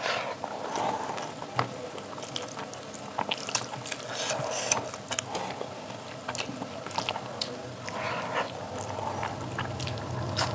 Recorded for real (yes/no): yes